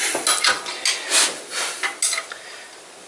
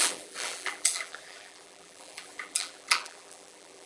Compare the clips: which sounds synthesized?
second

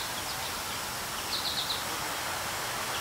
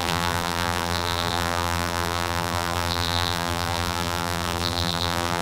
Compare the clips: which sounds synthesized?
second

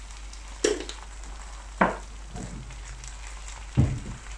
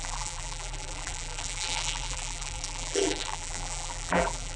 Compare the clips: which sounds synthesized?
second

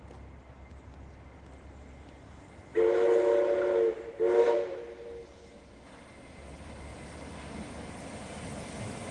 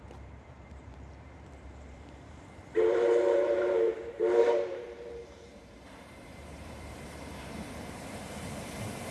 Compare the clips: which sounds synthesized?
second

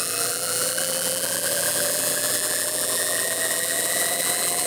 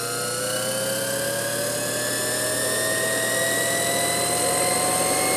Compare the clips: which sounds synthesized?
first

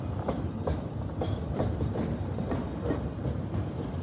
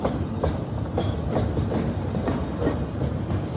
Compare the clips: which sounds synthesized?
first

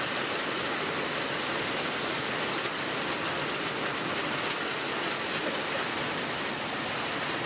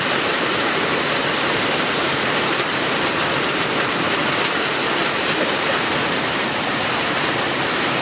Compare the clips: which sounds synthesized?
second